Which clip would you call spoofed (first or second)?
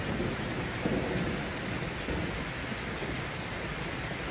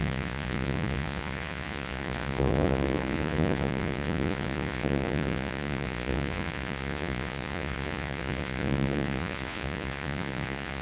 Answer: second